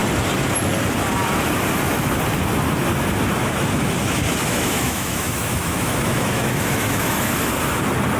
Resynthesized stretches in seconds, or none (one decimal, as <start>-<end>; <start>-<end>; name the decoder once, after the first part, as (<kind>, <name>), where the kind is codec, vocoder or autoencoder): 4.4-7.4 (autoencoder, DAC-VAE)